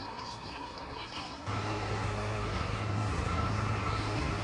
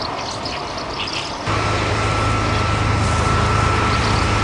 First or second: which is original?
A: second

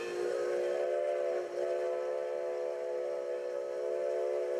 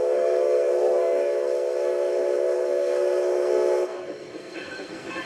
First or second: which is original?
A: first